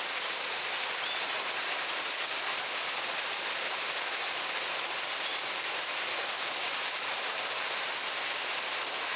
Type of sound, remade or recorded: recorded